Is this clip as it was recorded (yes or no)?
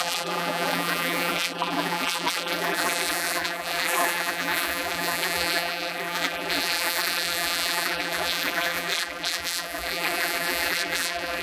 no